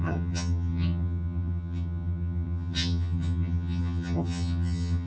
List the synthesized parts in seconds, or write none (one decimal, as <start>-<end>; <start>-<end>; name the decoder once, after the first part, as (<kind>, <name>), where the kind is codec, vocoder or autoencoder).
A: 0.0-5.1 (vocoder, HiFi-GAN)